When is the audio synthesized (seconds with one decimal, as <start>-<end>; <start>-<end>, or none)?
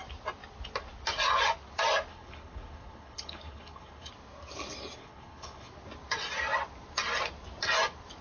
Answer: 2.1-4.1; 5.0-5.7